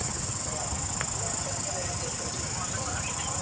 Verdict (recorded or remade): recorded